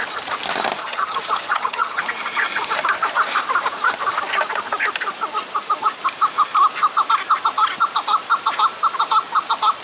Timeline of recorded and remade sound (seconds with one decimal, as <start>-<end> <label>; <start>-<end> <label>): 0.0-0.8 recorded; 0.8-2.0 remade; 2.0-9.8 recorded